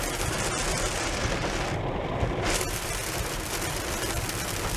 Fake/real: fake